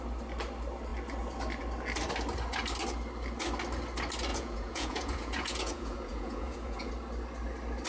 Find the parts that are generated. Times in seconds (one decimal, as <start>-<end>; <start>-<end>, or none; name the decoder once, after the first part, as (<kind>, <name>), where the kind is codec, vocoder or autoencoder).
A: 4.3-6.9 (vocoder, Vocos)